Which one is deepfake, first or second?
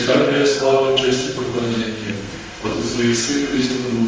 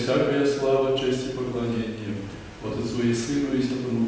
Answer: first